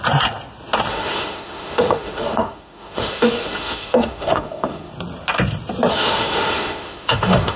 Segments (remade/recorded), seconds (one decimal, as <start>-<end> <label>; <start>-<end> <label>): 0.0-0.9 recorded; 0.9-4.9 remade; 4.9-5.9 recorded; 5.9-7.6 remade